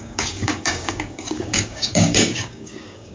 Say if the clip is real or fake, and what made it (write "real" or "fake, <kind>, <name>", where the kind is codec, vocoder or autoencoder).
fake, codec, DAC